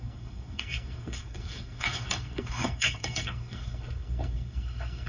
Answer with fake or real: fake